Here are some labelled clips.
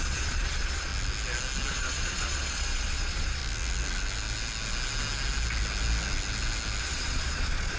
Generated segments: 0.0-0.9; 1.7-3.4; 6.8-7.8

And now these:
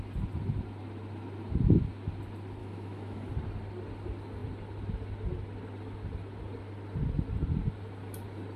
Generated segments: 2.6-3.3

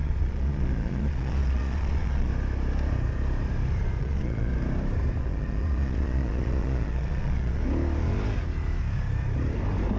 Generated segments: 0.0-2.3; 4.0-4.5; 5.2-7.6

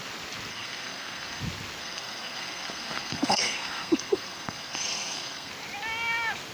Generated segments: 0.5-1.4; 1.8-5.5

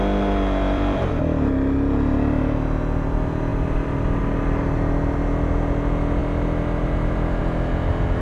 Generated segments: 0.0-1.1; 3.5-4.2

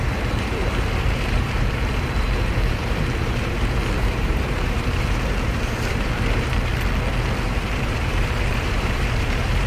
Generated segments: 0.0-6.7; 7.4-9.7

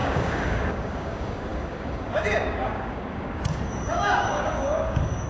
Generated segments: 0.0-5.3

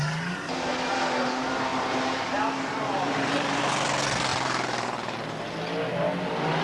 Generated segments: 1.7-3.6